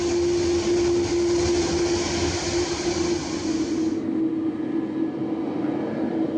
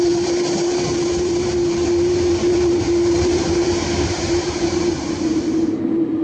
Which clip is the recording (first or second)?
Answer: first